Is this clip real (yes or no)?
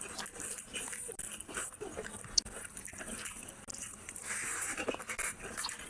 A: yes